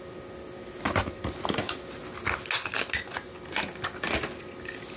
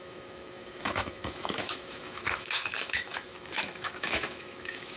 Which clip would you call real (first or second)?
first